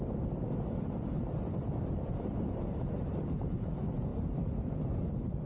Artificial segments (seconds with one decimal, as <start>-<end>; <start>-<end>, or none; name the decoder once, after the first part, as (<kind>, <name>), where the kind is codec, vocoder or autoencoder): none